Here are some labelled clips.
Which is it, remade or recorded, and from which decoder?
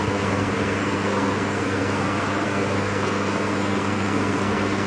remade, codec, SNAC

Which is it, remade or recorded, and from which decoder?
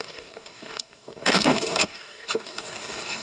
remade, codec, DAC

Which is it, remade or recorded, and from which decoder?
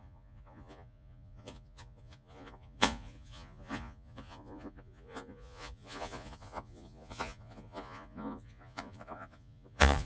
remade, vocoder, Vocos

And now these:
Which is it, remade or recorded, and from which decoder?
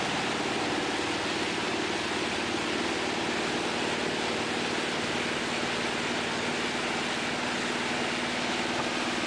recorded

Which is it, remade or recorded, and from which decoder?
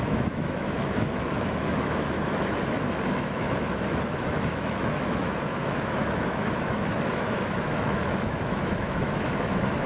remade, autoencoder, DAC-VAE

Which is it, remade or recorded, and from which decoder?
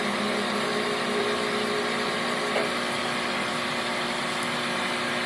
remade, vocoder, BigVGAN v2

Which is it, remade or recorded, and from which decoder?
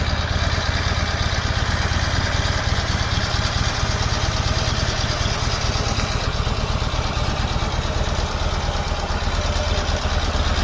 recorded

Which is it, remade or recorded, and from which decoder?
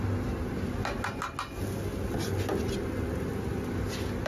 recorded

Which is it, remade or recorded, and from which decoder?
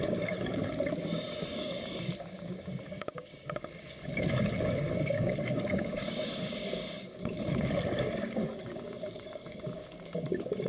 remade, codec, DAC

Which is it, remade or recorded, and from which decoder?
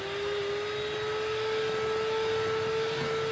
recorded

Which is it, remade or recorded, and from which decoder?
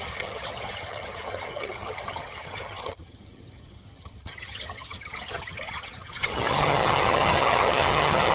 remade, vocoder, HiFi-GAN